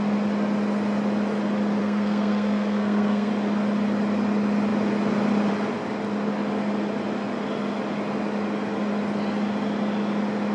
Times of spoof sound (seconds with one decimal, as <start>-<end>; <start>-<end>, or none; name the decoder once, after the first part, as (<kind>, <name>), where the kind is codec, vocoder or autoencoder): 1.8-3.3 (codec, SNAC)